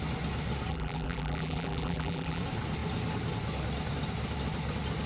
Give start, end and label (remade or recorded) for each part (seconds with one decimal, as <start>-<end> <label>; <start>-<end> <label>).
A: 0.0-0.7 recorded; 0.7-2.4 remade; 2.4-5.1 recorded